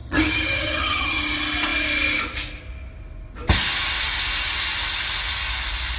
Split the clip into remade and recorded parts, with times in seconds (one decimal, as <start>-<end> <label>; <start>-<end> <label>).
0.0-1.2 remade; 1.2-6.0 recorded